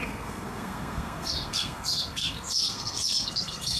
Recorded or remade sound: remade